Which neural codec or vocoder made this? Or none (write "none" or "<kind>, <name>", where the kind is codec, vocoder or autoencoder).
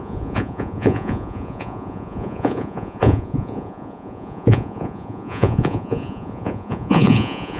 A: vocoder, Vocos